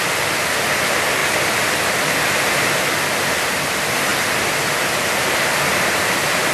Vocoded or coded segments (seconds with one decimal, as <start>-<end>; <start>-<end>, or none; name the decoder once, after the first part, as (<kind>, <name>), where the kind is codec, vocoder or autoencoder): none